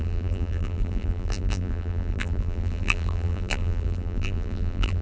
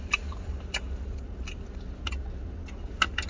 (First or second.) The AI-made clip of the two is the first